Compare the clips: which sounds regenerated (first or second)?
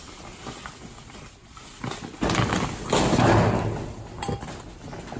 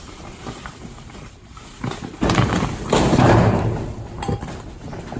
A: second